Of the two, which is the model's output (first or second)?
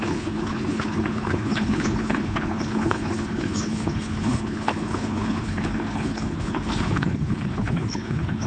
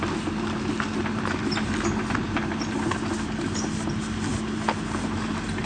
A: first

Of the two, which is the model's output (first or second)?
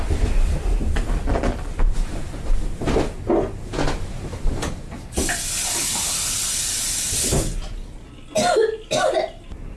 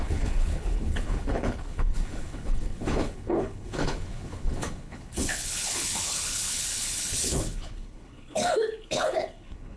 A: second